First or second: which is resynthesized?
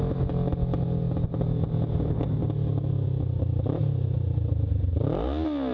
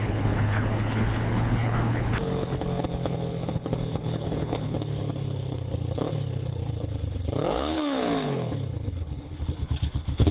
second